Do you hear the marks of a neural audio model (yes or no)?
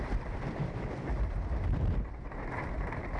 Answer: yes